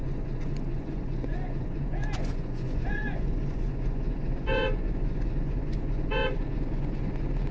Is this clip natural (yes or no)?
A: no